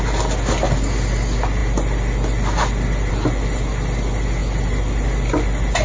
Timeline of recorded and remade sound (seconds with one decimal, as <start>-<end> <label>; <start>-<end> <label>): 0.0-5.8 recorded